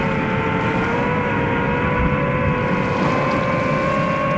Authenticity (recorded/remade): recorded